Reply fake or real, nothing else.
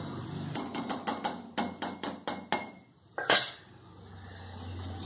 real